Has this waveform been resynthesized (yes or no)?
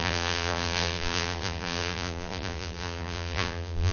yes